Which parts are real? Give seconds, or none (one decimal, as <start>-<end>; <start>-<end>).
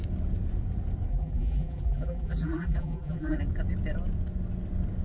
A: 0.0-1.1; 3.4-5.0